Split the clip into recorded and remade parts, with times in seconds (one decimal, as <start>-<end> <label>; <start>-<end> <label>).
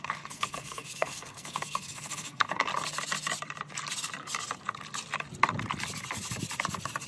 0.0-2.7 remade; 2.7-7.1 recorded